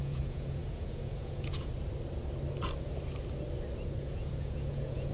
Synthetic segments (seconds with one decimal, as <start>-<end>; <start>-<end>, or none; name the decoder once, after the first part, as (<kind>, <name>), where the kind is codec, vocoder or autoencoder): 0.0-1.7 (vocoder, Vocos); 4.0-5.1